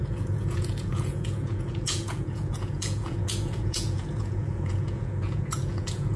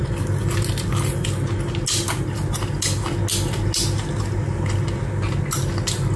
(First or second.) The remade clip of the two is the first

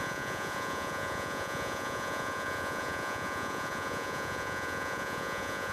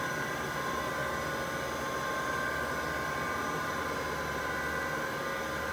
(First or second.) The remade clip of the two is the first